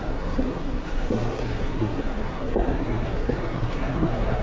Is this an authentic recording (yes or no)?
no